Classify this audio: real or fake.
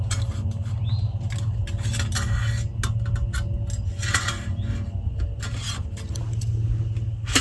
real